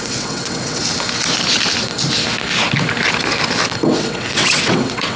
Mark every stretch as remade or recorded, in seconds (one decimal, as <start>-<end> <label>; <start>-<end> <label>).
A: 0.0-0.8 remade; 0.8-3.9 recorded; 3.9-5.2 remade